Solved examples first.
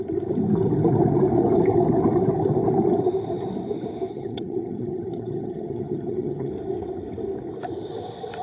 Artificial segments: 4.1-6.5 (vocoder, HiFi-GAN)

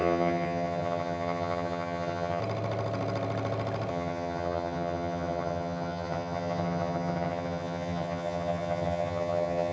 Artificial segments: 0.0-2.4 (vocoder, HiFi-GAN); 3.9-9.7

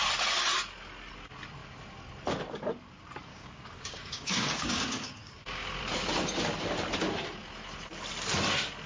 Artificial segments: 3.3-5.8 (codec, DAC)

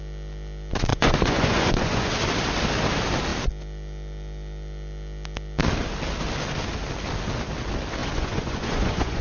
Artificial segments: 0.9-2.1 (vocoder, Vocos); 8.0-9.2

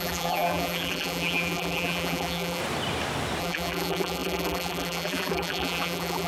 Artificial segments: 0.0-2.6 (vocoder, BigVGAN v2); 3.4-6.3

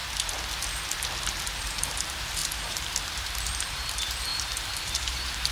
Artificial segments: 1.3-5.5 (vocoder, BigVGAN v2)

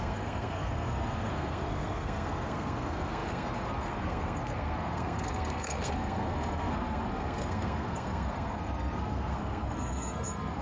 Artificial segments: 0.0-10.6 (codec, SNAC)